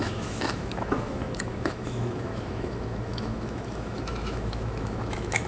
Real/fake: fake